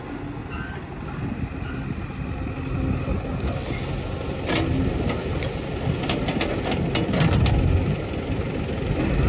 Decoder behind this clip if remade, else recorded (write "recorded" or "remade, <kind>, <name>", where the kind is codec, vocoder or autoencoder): recorded